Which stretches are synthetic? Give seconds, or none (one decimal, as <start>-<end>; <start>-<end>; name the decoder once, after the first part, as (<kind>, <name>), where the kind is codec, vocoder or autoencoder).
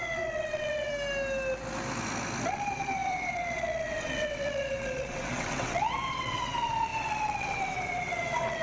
0.0-0.9 (vocoder, WaveNeXt); 2.5-8.6